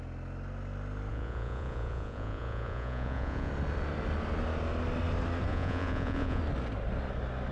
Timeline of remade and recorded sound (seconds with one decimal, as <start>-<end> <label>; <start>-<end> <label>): 0.0-1.1 recorded; 1.1-3.5 remade; 3.5-5.5 recorded; 5.5-6.4 remade; 6.4-7.5 recorded

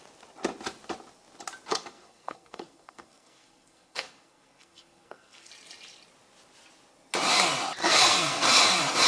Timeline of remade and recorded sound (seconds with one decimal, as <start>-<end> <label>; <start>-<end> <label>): 0.0-1.7 recorded; 1.7-5.5 remade; 5.5-7.8 recorded; 7.8-8.6 remade; 8.6-9.1 recorded